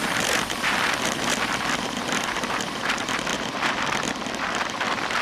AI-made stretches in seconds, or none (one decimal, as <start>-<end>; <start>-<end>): 0.0-5.2

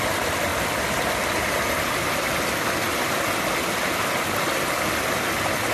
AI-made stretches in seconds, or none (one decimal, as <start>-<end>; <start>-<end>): none